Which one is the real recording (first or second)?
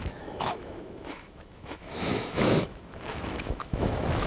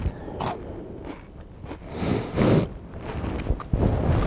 second